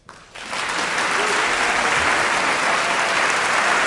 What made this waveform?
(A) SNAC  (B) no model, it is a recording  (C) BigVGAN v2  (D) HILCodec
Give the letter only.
B